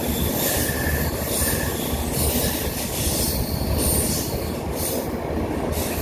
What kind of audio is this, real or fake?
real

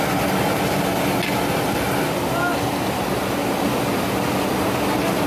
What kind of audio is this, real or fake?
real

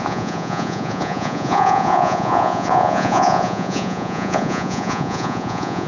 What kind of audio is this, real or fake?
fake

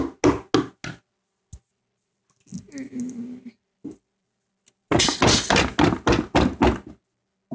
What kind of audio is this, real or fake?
real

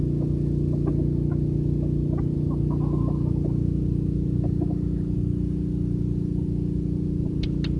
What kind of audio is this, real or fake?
real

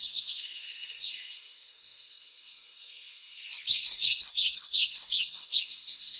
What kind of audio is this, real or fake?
fake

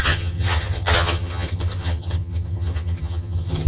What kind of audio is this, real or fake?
fake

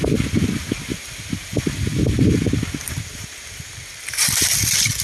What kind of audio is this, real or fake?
real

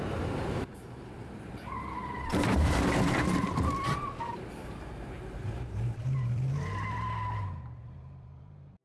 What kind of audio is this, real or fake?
fake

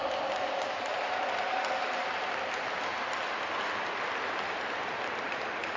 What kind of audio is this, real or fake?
real